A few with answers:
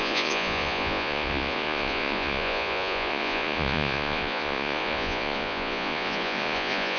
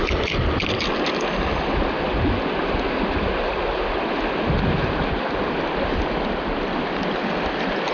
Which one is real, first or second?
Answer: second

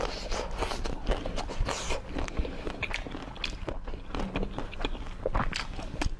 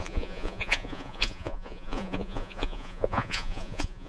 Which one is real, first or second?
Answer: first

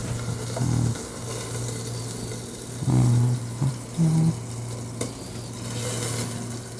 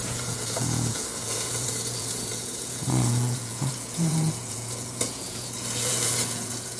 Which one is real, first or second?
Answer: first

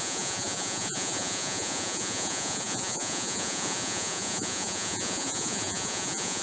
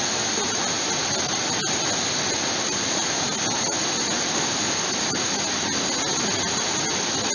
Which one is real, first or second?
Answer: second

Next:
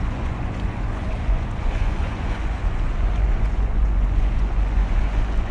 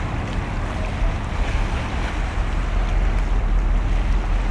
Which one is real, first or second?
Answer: second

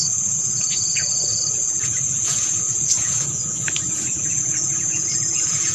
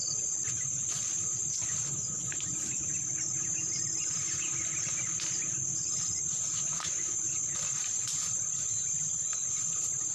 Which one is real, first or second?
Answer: second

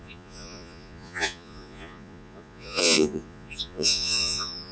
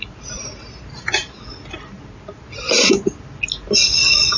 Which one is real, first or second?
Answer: second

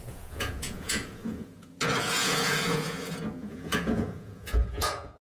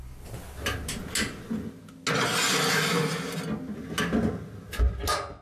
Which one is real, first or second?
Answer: second